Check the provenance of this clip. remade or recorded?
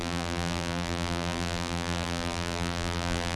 remade